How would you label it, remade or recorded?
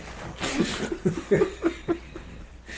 recorded